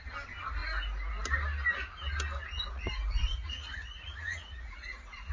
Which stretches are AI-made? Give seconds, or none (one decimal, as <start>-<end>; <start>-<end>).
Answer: 2.4-5.3

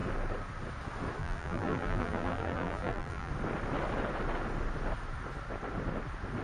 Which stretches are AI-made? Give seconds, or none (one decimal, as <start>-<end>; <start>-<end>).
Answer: 1.2-3.3

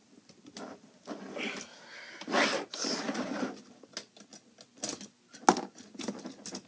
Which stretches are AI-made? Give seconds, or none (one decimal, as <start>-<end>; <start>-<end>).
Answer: none

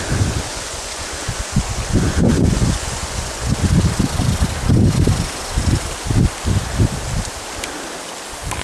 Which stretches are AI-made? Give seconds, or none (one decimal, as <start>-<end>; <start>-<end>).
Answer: 0.0-3.5

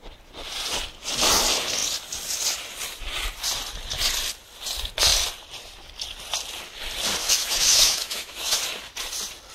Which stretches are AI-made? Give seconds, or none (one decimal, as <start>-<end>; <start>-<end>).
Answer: 7.2-8.6

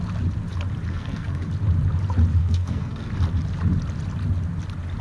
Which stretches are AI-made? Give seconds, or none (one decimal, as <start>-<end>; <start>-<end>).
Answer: 0.9-1.5; 2.4-3.1